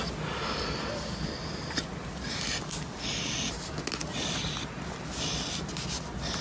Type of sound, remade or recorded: recorded